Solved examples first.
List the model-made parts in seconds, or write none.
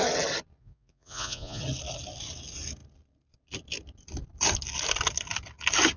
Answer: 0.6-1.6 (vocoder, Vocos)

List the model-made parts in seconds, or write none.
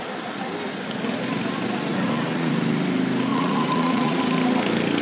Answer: 1.9-2.5 (vocoder, Vocos); 3.3-4.2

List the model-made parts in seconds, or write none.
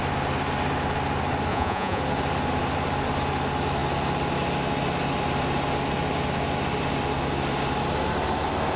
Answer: 1.5-2.0 (vocoder, Vocos)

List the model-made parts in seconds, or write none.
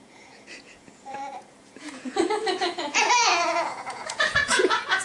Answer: 0.0-5.0 (vocoder, Vocos)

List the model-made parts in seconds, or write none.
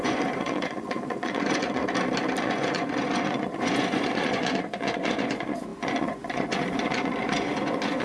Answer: 0.0-1.8 (vocoder, Vocos); 2.4-8.0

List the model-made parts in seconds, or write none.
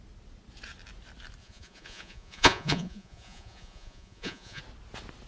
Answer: 1.4-4.6 (vocoder, Vocos)